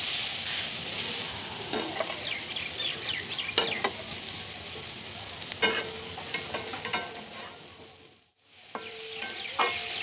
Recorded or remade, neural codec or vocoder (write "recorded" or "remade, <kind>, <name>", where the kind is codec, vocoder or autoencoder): recorded